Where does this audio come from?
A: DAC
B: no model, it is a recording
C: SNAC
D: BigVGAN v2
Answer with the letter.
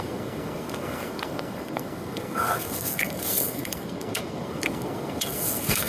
C